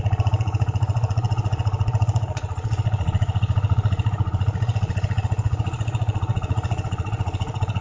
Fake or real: fake